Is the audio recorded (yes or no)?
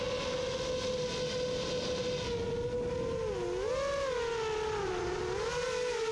yes